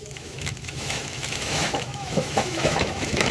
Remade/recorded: remade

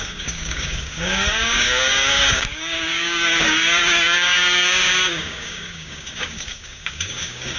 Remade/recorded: remade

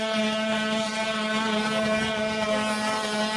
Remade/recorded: recorded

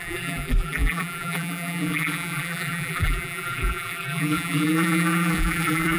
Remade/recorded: remade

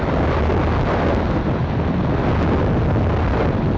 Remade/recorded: recorded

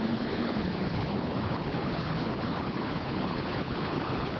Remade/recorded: remade